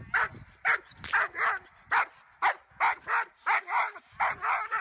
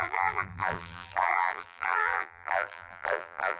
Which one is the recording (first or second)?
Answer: first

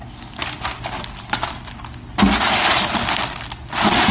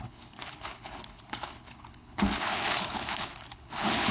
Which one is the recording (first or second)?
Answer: first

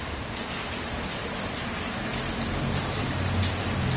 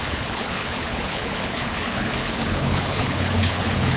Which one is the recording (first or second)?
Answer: first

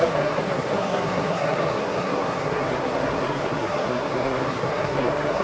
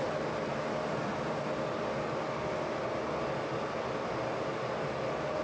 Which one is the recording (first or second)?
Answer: second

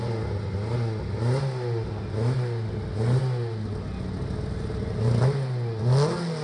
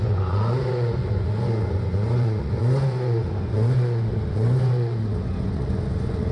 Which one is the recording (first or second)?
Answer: first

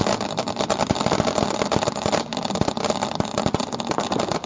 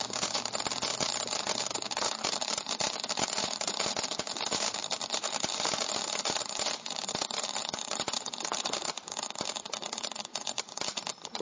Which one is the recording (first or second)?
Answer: first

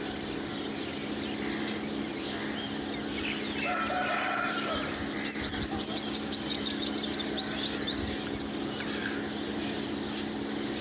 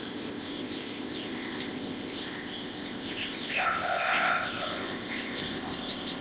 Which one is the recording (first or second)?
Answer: first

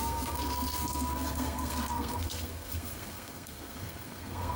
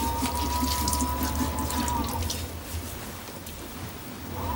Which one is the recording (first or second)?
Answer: second